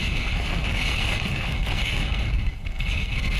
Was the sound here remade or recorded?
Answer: remade